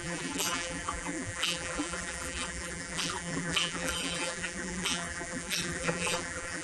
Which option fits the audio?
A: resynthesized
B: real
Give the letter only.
A